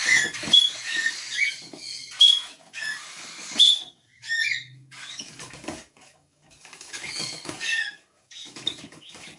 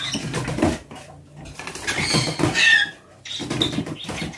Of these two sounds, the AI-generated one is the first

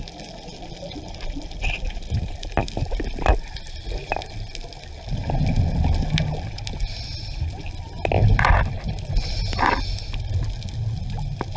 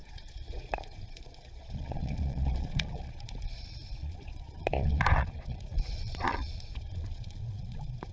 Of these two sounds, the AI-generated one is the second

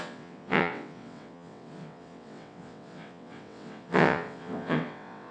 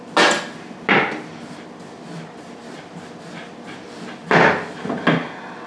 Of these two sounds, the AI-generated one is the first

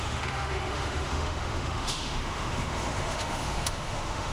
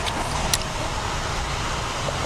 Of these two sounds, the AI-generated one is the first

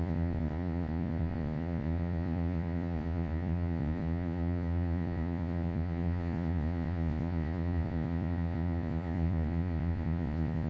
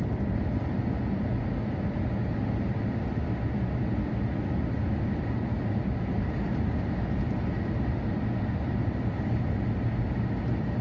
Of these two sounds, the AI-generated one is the first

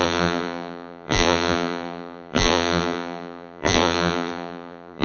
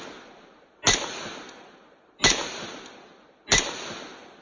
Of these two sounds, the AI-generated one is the first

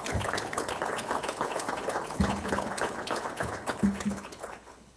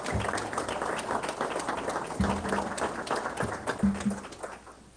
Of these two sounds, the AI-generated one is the first